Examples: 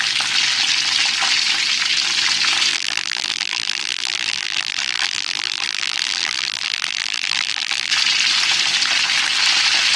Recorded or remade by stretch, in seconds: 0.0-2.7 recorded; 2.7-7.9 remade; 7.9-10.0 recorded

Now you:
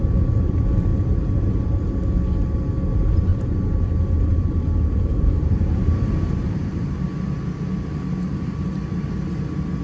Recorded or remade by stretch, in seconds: 0.0-0.9 recorded; 0.9-2.0 remade; 2.0-3.3 recorded; 3.3-7.0 remade; 7.0-9.8 recorded

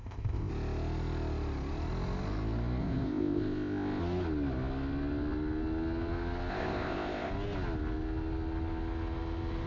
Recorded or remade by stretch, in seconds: 0.0-0.5 remade; 0.5-2.8 recorded; 2.8-4.0 remade; 4.0-6.5 recorded; 6.5-7.3 remade; 7.3-9.7 recorded

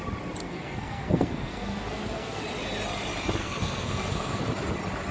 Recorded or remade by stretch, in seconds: 0.0-0.4 recorded; 0.4-2.4 remade; 2.4-3.4 recorded; 3.4-4.4 remade; 4.4-5.1 recorded

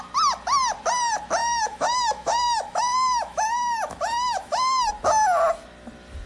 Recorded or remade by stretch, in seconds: 0.0-1.4 recorded; 1.4-4.9 remade; 4.9-6.3 recorded

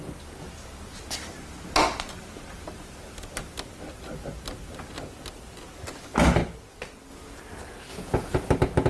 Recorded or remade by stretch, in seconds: 0.0-7.9 recorded; 7.9-8.5 remade; 8.5-8.9 recorded

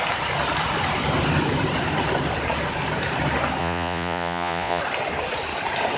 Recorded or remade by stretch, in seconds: 0.0-3.6 recorded; 3.6-4.8 remade; 4.8-6.0 recorded

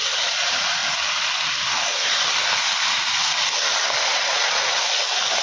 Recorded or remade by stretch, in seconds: 0.0-4.1 recorded; 4.1-4.8 remade; 4.8-5.4 recorded